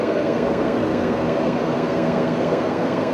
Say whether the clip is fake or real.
fake